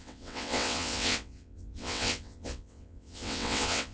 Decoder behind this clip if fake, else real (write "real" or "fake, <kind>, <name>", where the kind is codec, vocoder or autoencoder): fake, vocoder, WaveNeXt